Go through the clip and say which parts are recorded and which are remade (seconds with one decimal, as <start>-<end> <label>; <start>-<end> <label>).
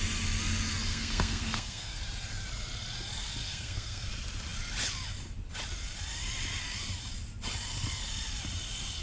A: 0.0-0.9 recorded; 0.9-2.0 remade; 2.0-3.4 recorded; 3.4-4.1 remade; 4.1-9.0 recorded